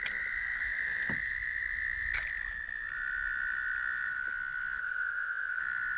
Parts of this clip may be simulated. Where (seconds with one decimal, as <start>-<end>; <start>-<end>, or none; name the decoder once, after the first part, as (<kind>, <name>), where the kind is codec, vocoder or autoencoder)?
4.8-5.6 (codec, ZipCodec)